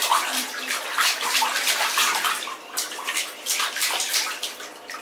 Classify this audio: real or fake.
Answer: fake